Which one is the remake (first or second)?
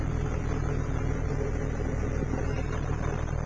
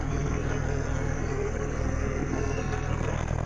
second